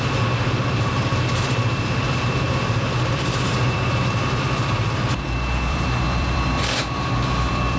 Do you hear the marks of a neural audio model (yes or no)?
yes